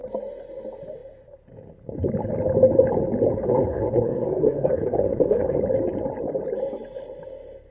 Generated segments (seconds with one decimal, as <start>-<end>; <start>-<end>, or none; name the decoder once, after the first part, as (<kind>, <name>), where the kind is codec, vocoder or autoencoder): 3.4-5.6 (codec, SNAC)

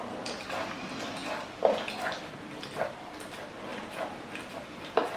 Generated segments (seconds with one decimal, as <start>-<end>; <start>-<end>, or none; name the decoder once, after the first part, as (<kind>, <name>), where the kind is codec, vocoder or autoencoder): none

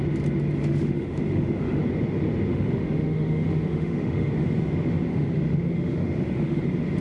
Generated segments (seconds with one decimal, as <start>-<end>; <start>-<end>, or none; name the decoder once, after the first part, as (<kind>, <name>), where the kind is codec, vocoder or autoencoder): 0.6-1.8 (autoencoder, DAC-VAE); 2.5-4.3; 5.1-6.6